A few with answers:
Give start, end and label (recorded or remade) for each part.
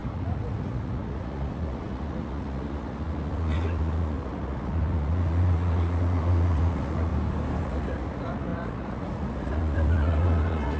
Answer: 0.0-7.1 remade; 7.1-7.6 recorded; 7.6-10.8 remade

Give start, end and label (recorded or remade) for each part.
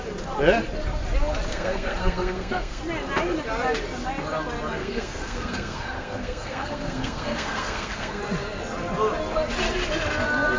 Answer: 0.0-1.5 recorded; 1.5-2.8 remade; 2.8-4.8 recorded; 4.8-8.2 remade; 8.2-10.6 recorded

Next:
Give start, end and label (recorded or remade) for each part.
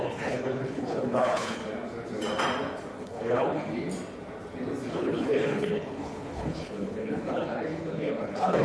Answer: 0.0-1.6 remade; 1.6-3.0 recorded; 3.0-3.7 remade; 3.7-4.9 recorded; 4.9-8.6 remade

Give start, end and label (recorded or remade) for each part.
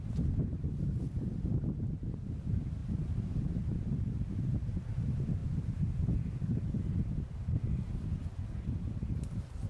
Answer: 0.0-2.8 recorded; 2.8-3.8 remade; 3.8-9.7 recorded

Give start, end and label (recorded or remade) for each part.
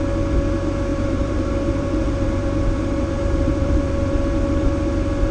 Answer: 0.0-0.9 recorded; 0.9-4.1 remade; 4.1-5.3 recorded